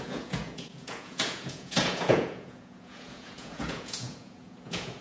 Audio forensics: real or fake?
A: fake